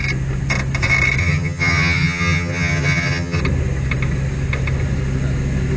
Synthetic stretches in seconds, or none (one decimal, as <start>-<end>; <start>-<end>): 1.2-3.4